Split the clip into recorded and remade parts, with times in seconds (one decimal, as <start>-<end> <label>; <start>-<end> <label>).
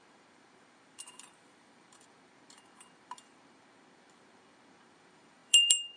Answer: 0.0-6.0 remade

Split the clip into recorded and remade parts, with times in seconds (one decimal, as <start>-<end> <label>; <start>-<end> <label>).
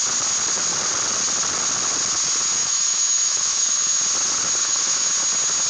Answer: 0.0-2.6 recorded; 2.6-4.0 remade; 4.0-4.6 recorded; 4.6-5.1 remade; 5.1-5.7 recorded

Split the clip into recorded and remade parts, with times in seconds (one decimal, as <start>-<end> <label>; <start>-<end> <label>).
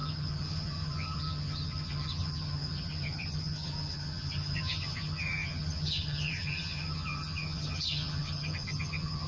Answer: 0.0-9.3 remade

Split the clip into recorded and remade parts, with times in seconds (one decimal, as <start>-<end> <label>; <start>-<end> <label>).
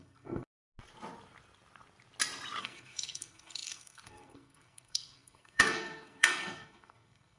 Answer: 0.0-0.7 remade; 0.7-2.6 recorded; 2.6-7.4 remade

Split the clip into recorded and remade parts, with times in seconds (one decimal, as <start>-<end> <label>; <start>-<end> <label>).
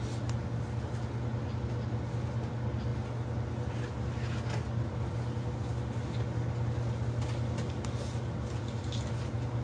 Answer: 0.0-9.6 recorded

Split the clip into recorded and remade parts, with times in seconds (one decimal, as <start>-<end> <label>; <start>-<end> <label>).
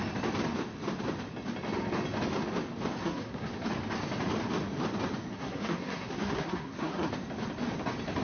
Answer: 0.0-3.0 recorded; 3.0-3.5 remade; 3.5-5.3 recorded; 5.3-7.1 remade; 7.1-8.2 recorded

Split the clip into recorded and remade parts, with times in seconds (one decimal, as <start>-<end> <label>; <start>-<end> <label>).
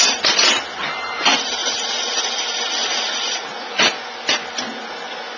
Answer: 0.0-1.6 recorded; 1.6-2.3 remade; 2.3-2.8 recorded; 2.8-3.8 remade; 3.8-5.4 recorded